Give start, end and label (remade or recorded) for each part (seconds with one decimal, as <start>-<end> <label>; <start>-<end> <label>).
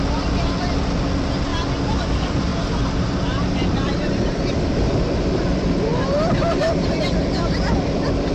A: 0.0-1.5 remade; 1.5-2.1 recorded; 2.1-2.5 remade; 2.5-4.6 recorded; 4.6-8.3 remade